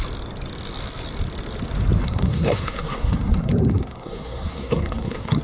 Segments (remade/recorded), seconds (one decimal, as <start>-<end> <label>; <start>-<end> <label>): 0.0-2.0 recorded; 2.0-5.4 remade